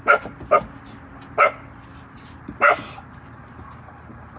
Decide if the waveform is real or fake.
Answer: real